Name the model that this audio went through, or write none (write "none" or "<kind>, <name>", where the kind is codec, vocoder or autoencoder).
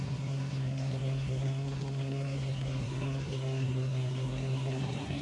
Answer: codec, SNAC